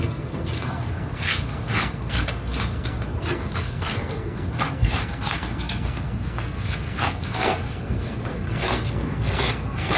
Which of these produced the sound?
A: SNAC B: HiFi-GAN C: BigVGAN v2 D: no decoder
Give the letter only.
A